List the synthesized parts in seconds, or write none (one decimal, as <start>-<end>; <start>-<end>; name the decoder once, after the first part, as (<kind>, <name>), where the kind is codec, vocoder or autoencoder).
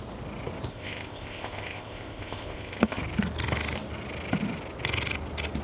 0.7-3.0 (codec, ZipCodec)